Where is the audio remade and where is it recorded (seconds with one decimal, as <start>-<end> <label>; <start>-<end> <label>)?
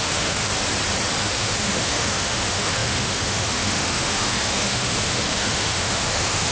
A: 0.0-0.5 remade; 0.5-1.2 recorded; 1.2-6.5 remade